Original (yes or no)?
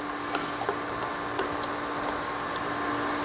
yes